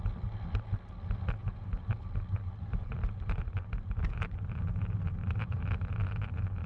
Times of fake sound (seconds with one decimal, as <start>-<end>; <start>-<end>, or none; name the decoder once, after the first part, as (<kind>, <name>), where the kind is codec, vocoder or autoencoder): 1.4-1.9 (vocoder, BigVGAN v2); 2.7-5.7